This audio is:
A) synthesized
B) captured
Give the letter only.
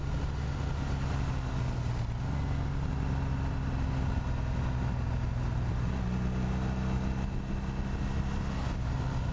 B